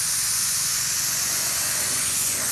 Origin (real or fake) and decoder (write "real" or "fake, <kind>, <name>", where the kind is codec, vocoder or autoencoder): fake, vocoder, Vocos